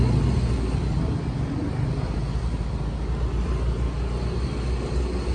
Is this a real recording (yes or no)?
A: yes